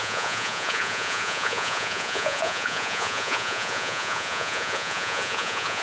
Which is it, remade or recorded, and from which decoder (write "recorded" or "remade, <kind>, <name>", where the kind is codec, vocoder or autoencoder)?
remade, vocoder, Vocos